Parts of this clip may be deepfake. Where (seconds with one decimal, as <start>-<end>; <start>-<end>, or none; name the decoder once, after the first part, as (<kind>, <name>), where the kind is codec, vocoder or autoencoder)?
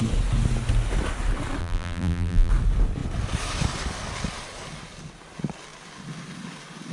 1.6-2.5 (vocoder, BigVGAN v2)